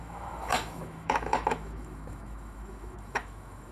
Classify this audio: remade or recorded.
remade